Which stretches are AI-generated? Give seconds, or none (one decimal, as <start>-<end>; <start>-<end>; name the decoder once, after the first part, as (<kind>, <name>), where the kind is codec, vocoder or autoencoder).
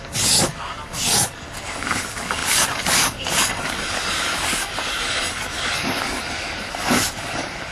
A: 0.0-7.7 (codec, DAC)